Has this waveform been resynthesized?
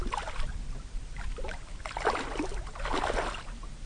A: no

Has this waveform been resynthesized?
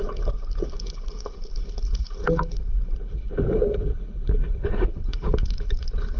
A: yes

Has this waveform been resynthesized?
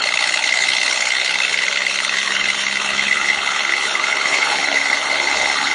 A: yes